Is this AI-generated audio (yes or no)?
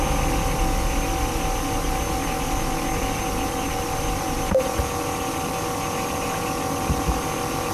no